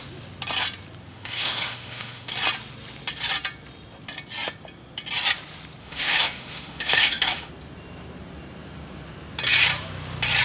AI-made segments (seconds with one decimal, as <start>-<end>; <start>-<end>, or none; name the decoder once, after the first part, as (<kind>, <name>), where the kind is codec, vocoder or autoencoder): 1.1-2.3 (autoencoder, DAC-VAE); 5.8-7.5